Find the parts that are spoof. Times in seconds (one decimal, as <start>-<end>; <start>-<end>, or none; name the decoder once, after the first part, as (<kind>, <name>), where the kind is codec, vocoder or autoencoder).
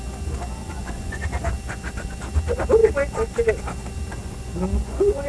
0.6-1.5 (vocoder, Vocos); 4.2-5.3